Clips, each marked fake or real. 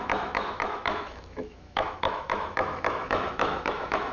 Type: fake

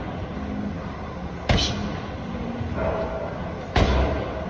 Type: real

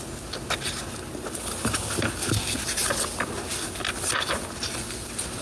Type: real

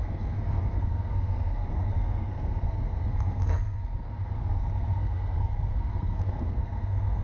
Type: fake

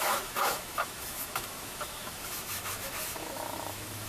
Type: fake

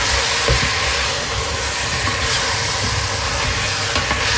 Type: real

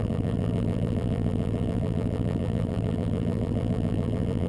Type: fake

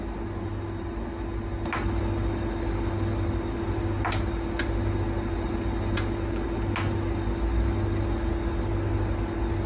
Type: real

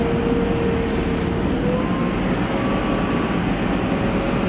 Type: real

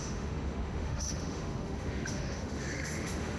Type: fake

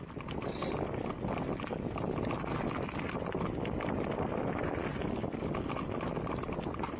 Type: real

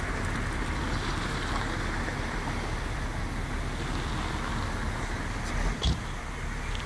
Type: real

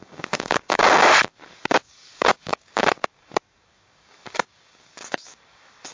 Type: fake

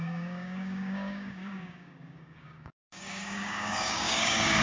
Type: fake